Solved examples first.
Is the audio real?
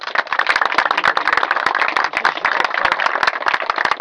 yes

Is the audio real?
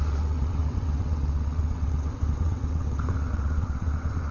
no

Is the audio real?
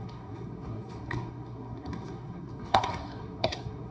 no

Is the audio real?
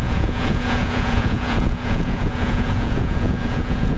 no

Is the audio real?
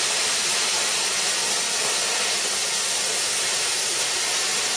yes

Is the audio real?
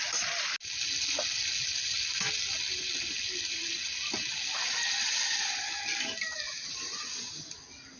yes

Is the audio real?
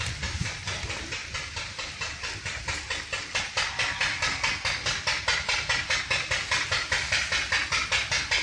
yes